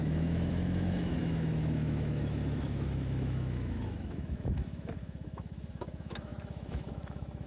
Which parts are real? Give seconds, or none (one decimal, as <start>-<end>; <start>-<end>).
none